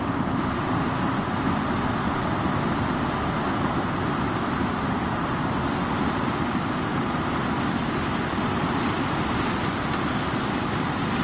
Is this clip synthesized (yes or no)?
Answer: no